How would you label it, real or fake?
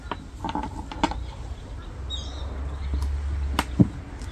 real